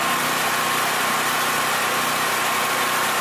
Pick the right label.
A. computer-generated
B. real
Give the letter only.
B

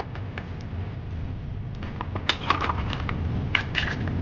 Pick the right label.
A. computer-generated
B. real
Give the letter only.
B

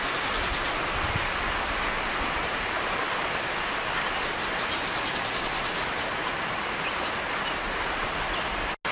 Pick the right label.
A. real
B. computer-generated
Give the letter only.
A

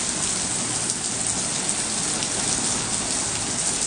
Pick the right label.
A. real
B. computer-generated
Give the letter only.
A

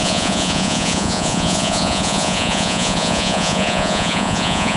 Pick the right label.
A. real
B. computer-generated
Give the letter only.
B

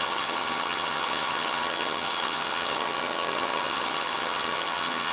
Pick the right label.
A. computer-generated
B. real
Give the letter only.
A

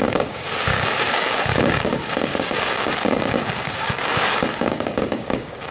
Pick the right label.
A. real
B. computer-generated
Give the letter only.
B